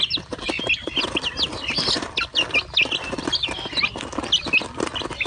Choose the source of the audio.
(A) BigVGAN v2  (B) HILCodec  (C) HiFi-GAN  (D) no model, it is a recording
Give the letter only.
D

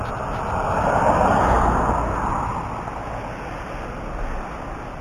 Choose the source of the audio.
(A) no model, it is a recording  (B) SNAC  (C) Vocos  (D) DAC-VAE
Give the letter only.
A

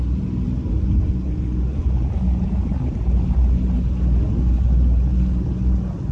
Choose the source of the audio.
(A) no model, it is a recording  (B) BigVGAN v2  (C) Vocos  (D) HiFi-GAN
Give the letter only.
A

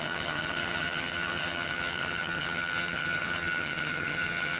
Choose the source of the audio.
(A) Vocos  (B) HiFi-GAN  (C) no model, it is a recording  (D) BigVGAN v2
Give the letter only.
B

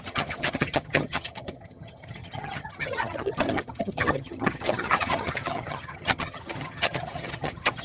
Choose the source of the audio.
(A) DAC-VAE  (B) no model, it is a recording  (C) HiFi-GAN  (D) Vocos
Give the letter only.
C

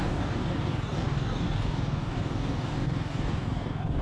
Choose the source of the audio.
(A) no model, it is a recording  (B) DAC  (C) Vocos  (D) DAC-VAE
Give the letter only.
B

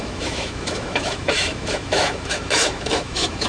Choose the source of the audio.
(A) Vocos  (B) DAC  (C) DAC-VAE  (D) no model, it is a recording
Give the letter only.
C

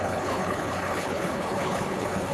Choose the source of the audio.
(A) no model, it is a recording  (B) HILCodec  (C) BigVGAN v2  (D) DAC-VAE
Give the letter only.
B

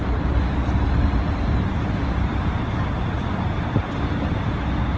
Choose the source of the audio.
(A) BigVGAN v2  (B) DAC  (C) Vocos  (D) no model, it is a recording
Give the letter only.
D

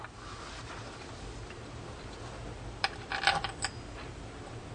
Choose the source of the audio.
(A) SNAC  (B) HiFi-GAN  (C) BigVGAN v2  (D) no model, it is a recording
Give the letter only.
D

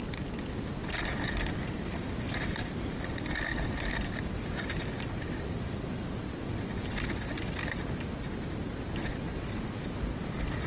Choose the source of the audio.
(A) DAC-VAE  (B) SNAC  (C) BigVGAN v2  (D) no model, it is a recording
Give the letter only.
D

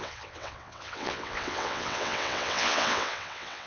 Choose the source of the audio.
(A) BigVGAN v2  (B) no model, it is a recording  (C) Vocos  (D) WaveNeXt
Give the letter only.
D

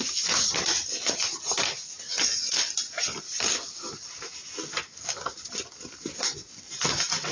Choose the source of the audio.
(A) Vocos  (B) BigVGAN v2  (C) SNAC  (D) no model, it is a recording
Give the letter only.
D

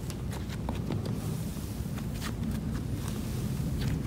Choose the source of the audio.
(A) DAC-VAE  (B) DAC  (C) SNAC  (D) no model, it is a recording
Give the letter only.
D